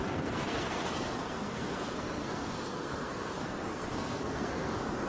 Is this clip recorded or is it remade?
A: remade